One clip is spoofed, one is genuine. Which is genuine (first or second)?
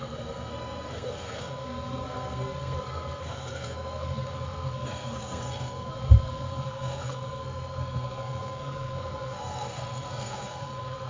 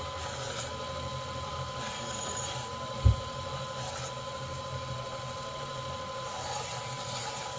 second